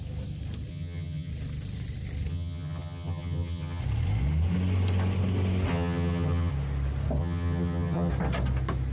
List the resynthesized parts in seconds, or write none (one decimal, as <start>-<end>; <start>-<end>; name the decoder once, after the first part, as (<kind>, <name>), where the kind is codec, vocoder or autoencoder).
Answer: 0.7-1.3 (vocoder, HiFi-GAN); 2.3-3.8; 5.7-6.5; 7.2-8.1